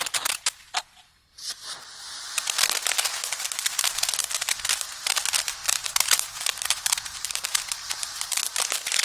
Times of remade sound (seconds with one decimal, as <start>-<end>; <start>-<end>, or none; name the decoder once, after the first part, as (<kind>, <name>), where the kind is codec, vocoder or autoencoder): 5.6-7.6 (vocoder, BigVGAN v2)